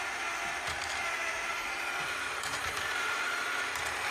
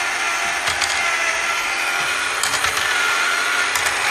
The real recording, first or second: second